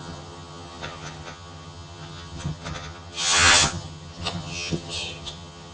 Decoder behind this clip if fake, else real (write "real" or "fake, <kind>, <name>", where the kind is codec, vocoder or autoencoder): fake, vocoder, HiFi-GAN